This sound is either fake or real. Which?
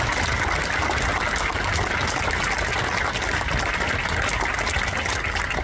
real